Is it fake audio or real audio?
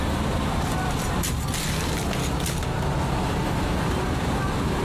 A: real